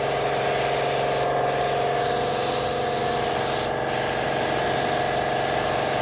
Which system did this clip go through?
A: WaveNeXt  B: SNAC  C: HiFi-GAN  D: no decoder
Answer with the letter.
D